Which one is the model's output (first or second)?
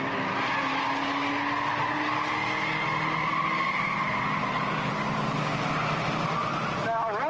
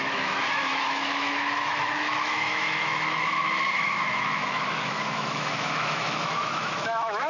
second